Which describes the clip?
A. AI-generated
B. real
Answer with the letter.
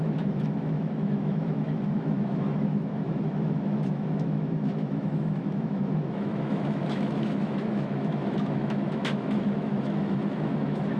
A